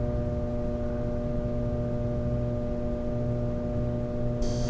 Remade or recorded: recorded